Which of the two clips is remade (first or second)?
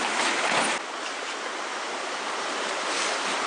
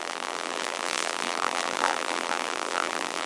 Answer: second